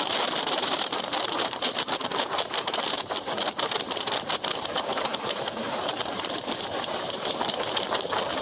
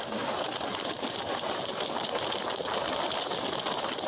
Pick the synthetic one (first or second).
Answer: first